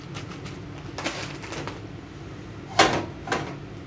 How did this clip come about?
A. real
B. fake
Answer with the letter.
A